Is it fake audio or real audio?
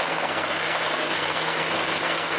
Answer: fake